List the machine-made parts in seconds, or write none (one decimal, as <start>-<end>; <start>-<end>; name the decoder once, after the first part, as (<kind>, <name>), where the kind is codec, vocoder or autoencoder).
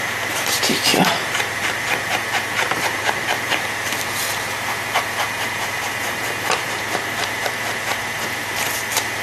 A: 0.0-9.2 (vocoder, BigVGAN v2)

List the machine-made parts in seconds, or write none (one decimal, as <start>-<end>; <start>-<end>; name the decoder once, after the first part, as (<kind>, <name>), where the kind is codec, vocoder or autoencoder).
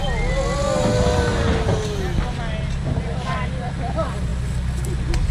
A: none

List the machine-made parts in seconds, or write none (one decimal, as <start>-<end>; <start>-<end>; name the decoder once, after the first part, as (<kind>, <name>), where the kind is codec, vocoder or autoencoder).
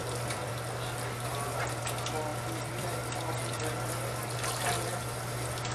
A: 0.0-0.5 (vocoder, BigVGAN v2); 2.3-3.6